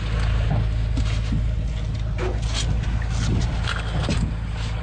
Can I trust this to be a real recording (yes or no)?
yes